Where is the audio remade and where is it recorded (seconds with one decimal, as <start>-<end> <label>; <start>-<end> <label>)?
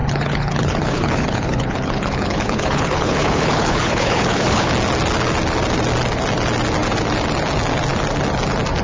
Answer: 0.0-4.7 remade; 4.7-8.8 recorded